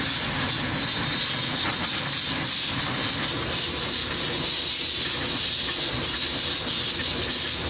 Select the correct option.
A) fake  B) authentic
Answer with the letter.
B